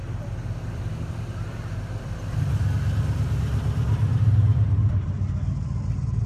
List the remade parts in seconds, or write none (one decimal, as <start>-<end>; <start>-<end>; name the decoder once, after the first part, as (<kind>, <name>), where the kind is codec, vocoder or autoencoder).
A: 2.0-6.3 (vocoder, BigVGAN v2)